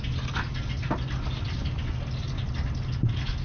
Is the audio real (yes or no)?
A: yes